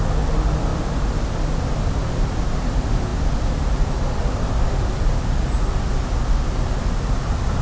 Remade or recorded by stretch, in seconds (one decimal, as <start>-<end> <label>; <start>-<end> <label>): 0.0-7.6 recorded